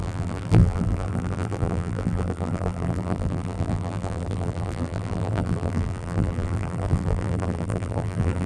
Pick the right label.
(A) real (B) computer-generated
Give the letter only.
B